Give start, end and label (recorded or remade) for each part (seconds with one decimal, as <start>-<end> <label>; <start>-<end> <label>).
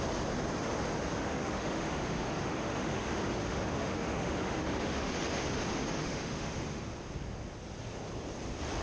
0.0-1.1 recorded; 1.1-5.1 remade; 5.1-6.0 recorded; 6.0-6.8 remade; 6.8-8.8 recorded